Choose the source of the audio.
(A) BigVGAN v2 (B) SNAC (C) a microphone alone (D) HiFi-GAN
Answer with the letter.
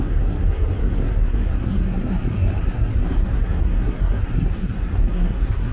B